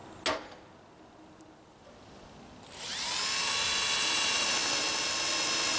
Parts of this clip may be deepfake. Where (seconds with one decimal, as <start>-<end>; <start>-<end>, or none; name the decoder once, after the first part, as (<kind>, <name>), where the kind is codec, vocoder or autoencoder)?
none

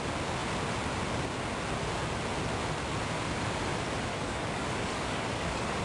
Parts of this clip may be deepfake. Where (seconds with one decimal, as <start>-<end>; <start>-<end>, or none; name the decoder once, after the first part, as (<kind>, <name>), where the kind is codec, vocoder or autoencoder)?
4.1-5.8 (codec, DAC)

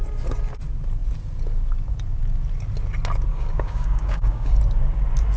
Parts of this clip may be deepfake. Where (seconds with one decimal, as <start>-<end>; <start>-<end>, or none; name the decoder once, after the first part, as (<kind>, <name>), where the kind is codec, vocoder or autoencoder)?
3.3-4.6 (codec, DAC)

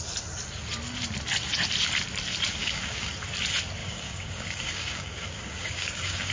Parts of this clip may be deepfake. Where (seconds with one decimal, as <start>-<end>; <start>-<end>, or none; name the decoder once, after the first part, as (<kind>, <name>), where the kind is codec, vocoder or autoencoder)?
2.6-3.1 (codec, DAC); 3.8-6.3

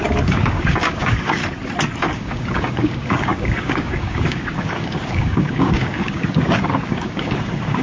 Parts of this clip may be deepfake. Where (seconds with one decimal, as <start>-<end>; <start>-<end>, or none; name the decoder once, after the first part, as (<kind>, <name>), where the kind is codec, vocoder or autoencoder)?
0.0-1.4 (codec, DAC); 2.1-7.8

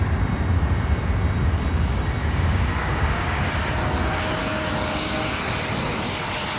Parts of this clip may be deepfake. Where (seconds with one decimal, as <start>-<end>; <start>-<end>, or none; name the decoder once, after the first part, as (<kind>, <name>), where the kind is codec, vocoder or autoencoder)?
2.2-3.4 (codec, DAC); 4.4-5.4

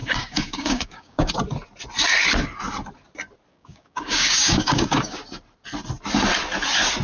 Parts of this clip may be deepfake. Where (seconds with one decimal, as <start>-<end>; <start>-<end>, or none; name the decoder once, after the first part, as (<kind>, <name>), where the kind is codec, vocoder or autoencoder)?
0.0-1.3 (codec, DAC); 3.5-5.2